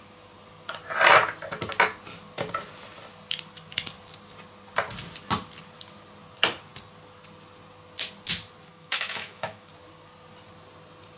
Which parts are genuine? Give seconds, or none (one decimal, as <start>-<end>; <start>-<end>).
0.0-8.7; 9.7-11.2